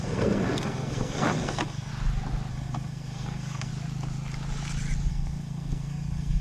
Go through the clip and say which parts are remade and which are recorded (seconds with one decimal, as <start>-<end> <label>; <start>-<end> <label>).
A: 0.0-1.9 remade; 1.9-2.5 recorded; 2.5-3.7 remade; 3.7-5.1 recorded; 5.1-6.4 remade